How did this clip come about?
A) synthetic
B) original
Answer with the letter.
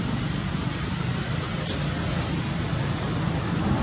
B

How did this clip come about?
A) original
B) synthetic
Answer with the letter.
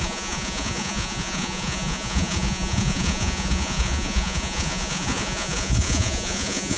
B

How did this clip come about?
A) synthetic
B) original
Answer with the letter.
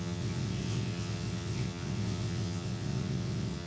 A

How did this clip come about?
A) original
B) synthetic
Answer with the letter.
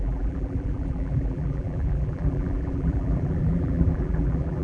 B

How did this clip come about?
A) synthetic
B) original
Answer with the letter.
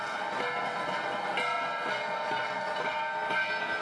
B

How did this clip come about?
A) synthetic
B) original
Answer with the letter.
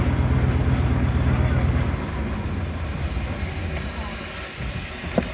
B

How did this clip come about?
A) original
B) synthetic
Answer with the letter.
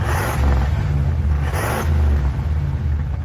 A